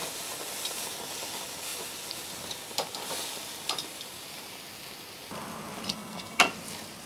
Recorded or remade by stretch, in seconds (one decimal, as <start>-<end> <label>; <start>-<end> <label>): 0.0-5.9 recorded; 5.9-6.5 remade; 6.5-7.1 recorded

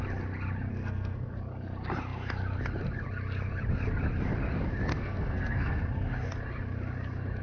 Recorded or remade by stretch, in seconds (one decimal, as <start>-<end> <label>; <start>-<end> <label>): 0.0-0.7 recorded; 0.7-1.3 remade; 1.3-4.9 recorded; 4.9-5.8 remade; 5.8-7.4 recorded

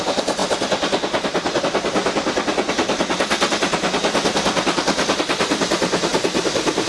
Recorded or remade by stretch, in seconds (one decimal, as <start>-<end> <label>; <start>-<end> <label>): 0.0-6.9 recorded

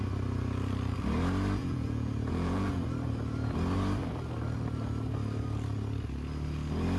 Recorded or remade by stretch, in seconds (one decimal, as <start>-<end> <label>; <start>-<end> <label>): 0.0-1.6 recorded; 1.6-2.7 remade; 2.7-7.0 recorded

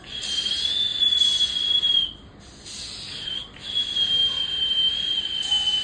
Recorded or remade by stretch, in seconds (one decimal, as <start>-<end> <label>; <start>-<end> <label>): 0.0-5.8 recorded